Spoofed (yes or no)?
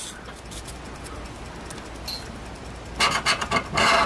no